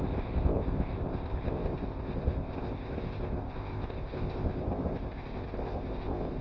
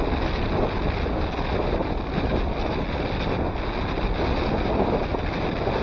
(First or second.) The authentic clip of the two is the second